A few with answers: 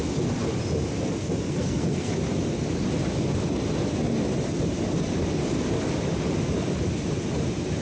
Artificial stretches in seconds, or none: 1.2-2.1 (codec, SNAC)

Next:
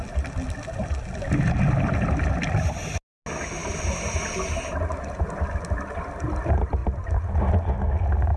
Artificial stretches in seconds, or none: none